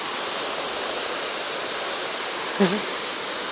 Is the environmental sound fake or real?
real